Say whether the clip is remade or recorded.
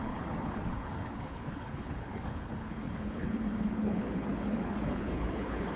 remade